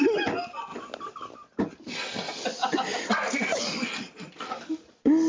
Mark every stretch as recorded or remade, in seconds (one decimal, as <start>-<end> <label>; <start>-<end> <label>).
0.0-5.3 recorded